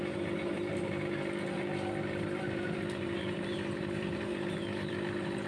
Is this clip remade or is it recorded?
remade